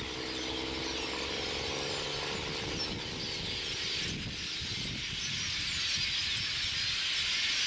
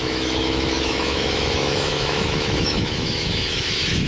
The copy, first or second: second